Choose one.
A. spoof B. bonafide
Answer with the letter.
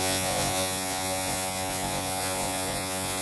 A